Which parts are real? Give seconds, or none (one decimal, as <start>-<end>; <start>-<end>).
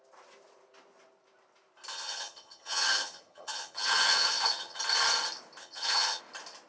0.0-1.9; 4.8-5.6; 6.2-6.7